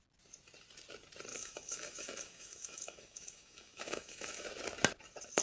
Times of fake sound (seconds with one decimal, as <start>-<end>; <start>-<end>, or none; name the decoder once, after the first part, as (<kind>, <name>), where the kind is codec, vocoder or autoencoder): 1.3-4.5 (autoencoder, DAC-VAE)